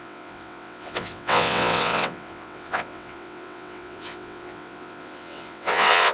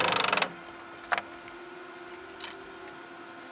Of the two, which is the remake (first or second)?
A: first